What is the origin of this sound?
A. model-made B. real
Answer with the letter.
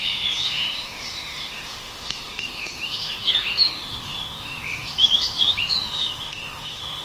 A